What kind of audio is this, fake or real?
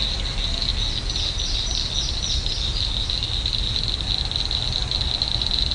real